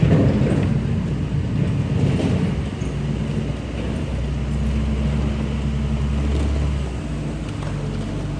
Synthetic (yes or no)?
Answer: no